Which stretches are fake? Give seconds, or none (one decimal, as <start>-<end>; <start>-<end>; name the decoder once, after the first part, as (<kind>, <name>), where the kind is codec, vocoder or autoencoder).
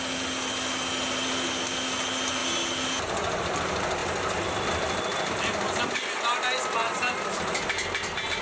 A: none